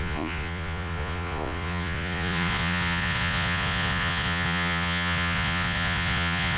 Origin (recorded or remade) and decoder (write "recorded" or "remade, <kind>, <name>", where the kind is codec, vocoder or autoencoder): remade, vocoder, Vocos